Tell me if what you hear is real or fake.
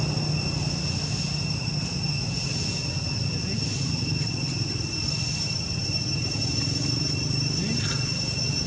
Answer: real